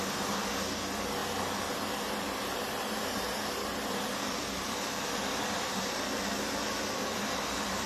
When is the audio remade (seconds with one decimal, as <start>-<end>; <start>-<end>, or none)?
none

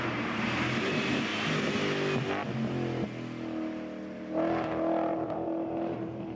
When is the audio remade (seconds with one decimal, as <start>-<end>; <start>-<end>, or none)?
0.0-1.3; 5.1-6.3

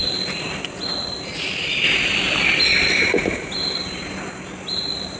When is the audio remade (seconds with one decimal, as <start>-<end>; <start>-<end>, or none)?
none